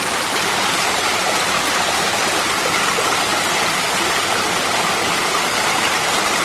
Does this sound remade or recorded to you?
recorded